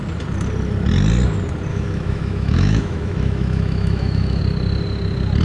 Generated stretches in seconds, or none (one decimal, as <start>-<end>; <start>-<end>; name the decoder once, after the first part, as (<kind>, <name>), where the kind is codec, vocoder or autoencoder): 1.7-4.4 (autoencoder, DAC-VAE)